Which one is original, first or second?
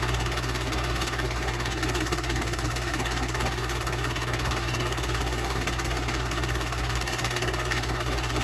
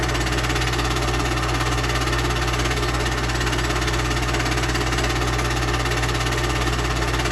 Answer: second